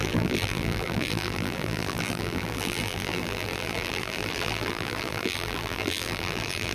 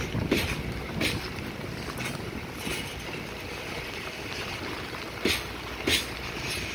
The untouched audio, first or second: second